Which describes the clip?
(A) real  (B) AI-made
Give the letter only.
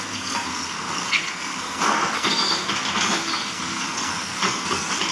B